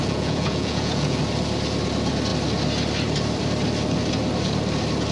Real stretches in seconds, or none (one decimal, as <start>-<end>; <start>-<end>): 1.2-5.1